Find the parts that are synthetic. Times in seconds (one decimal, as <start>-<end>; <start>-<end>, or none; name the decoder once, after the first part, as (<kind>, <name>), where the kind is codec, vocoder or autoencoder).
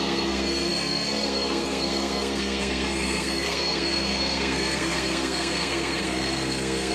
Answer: 0.0-6.9 (codec, SNAC)